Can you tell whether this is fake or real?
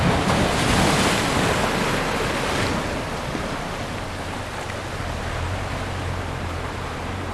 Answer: real